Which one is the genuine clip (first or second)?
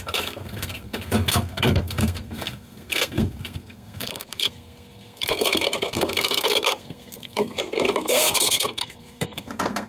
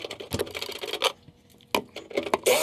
second